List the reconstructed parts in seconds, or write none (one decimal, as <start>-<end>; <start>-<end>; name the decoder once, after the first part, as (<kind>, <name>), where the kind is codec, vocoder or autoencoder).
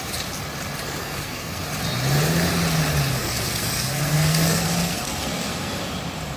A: 1.0-1.6 (codec, SNAC); 3.2-5.8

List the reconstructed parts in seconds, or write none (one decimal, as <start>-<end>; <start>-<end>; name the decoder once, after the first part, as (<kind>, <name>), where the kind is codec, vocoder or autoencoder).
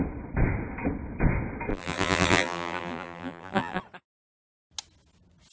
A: 1.7-3.8 (vocoder, BigVGAN v2)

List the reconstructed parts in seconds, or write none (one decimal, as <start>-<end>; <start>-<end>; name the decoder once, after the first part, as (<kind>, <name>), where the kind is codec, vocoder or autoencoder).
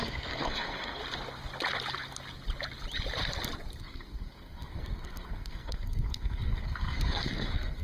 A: 0.0-1.0 (codec, SNAC); 3.8-7.8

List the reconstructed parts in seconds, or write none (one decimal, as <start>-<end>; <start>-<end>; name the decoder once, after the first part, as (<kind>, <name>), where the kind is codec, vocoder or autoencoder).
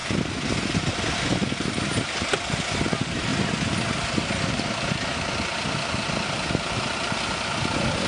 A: 0.0-3.3 (vocoder, BigVGAN v2); 4.5-8.1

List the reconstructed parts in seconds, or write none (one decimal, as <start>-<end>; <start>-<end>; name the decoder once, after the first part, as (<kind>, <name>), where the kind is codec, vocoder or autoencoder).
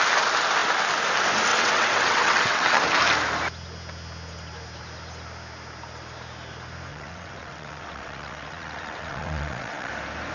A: 1.5-2.8 (vocoder, WaveNeXt); 6.9-9.9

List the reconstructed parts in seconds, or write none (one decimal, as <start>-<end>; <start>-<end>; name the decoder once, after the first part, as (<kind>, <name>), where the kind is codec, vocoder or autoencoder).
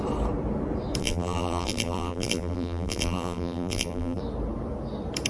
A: 1.0-4.2 (vocoder, BigVGAN v2)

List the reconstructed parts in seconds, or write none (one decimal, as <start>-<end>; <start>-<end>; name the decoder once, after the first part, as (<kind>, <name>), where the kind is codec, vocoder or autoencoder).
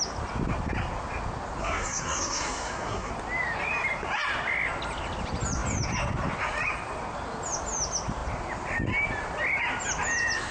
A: 1.6-3.1 (codec, SNAC)